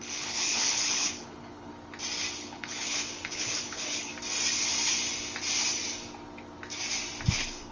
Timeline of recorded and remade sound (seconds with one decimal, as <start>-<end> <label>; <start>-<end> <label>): 0.0-1.7 remade; 1.7-2.4 recorded; 2.4-4.1 remade; 4.1-7.3 recorded; 7.3-7.7 remade